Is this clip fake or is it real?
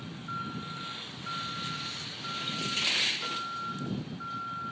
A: real